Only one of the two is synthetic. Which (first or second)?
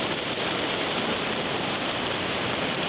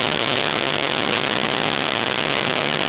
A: second